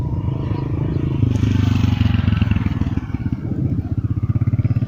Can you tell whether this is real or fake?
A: real